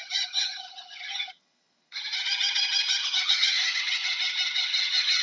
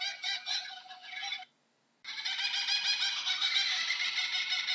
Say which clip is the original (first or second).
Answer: second